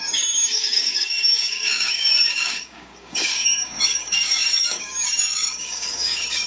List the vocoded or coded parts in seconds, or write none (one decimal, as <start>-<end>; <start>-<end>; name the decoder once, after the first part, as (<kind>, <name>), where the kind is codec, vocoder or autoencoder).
0.0-6.5 (codec, DAC)